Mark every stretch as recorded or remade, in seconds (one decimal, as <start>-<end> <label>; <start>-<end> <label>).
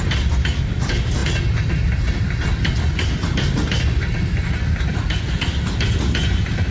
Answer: 0.0-6.7 recorded